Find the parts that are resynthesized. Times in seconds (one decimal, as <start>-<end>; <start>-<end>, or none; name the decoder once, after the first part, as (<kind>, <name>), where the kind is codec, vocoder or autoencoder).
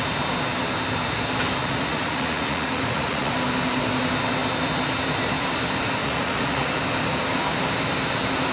1.6-3.3 (vocoder, Vocos); 6.0-6.7